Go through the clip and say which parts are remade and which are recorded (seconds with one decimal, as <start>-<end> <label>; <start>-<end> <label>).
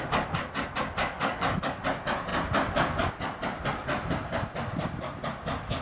0.0-1.0 recorded; 1.0-1.8 remade; 1.8-5.8 recorded